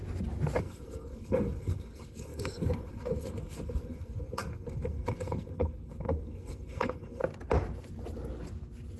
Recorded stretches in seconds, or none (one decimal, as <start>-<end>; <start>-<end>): 0.0-0.6; 7.2-9.0